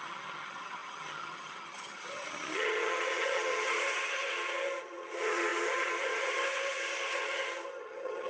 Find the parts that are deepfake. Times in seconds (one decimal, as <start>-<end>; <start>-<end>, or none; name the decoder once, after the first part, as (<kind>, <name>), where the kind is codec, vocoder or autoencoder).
0.0-8.3 (vocoder, HiFi-GAN)